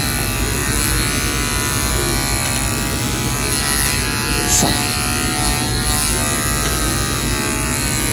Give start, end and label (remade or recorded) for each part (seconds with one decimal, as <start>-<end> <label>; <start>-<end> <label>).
0.0-8.1 recorded